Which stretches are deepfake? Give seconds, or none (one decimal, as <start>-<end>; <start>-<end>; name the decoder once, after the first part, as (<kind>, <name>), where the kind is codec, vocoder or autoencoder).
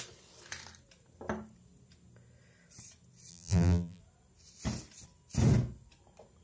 3.3-4.0 (vocoder, BigVGAN v2)